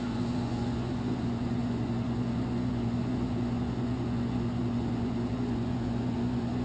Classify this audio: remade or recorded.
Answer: remade